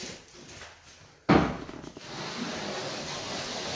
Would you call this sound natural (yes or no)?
yes